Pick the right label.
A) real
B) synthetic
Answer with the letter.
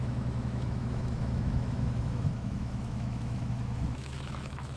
B